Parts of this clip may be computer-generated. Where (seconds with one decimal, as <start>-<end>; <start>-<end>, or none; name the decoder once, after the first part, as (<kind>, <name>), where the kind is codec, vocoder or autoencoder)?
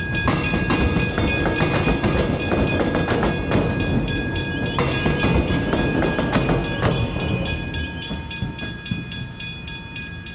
none